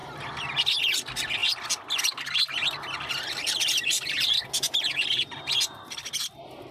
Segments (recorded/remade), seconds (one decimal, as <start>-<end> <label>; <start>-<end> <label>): 0.0-6.7 recorded